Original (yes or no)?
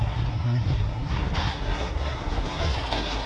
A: no